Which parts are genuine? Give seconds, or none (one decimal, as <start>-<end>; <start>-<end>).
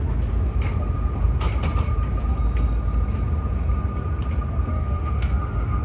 0.0-4.7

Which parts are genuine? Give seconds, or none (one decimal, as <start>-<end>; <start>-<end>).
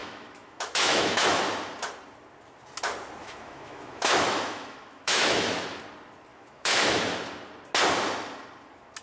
1.4-3.2; 5.8-6.3; 7.0-9.0